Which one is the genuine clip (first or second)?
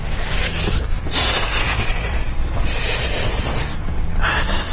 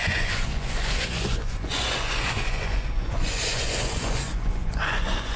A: first